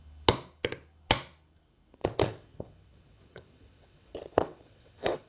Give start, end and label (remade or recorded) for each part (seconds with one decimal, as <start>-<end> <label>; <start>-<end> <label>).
0.0-2.0 recorded; 2.0-5.3 remade